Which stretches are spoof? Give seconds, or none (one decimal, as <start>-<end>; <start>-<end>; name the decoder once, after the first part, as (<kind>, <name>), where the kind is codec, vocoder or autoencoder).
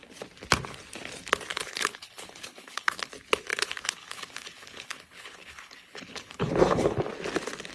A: 1.5-3.1 (codec, HILCodec); 3.5-7.0